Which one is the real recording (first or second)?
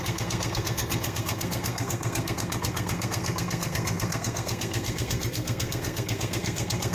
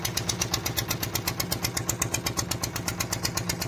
second